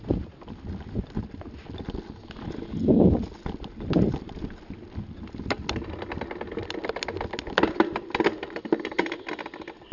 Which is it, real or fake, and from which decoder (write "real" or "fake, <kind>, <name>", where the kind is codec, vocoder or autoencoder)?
real